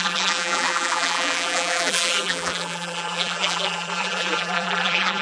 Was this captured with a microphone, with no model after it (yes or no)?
no